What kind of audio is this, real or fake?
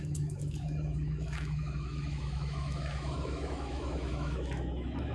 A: fake